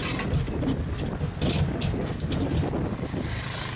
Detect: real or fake real